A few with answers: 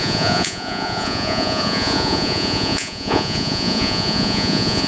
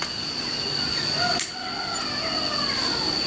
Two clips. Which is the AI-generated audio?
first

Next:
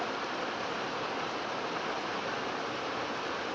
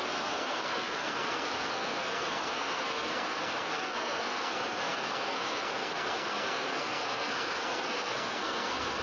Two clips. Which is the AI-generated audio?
second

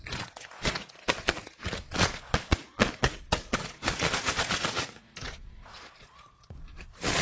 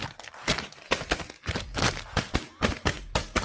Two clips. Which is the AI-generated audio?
first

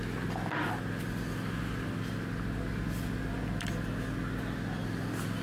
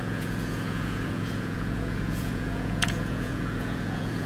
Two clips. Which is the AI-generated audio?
second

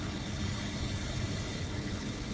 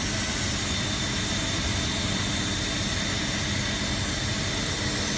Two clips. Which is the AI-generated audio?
first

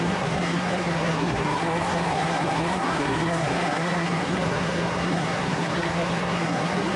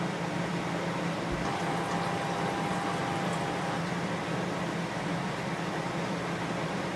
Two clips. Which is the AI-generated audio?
first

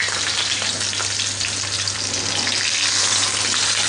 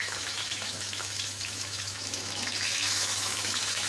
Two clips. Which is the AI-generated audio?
second